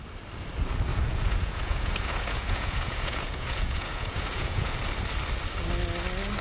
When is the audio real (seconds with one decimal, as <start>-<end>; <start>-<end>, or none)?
0.0-0.9; 4.7-6.4